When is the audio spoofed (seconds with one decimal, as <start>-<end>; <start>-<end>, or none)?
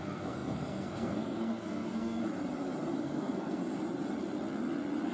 0.0-2.2; 3.0-3.6